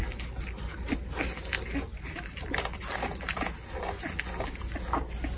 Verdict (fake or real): real